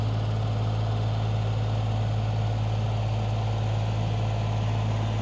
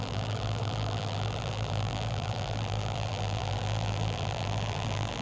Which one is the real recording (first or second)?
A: first